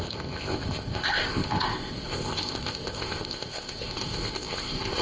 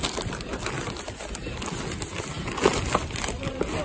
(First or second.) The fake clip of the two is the first